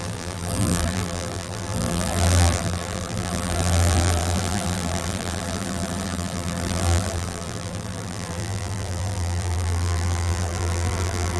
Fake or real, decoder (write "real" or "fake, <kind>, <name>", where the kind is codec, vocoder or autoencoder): fake, vocoder, BigVGAN v2